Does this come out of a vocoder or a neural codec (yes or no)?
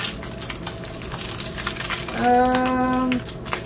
no